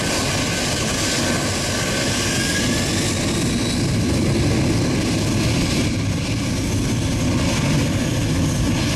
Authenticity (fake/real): real